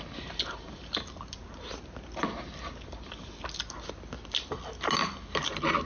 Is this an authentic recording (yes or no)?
yes